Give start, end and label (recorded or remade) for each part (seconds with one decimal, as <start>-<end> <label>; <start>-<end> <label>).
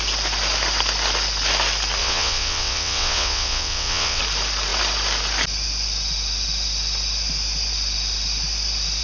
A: 0.0-2.0 recorded; 2.0-4.2 remade; 4.2-9.0 recorded